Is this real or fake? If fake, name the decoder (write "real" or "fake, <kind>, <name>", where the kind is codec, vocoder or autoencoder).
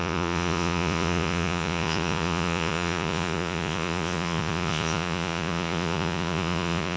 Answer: fake, vocoder, Vocos